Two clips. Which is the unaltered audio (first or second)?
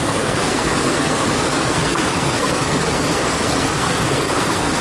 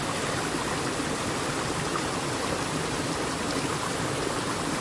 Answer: second